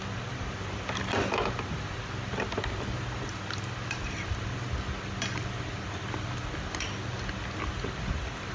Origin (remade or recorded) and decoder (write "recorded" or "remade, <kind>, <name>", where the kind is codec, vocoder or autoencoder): recorded